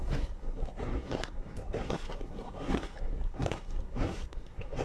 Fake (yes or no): yes